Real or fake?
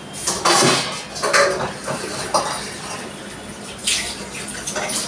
real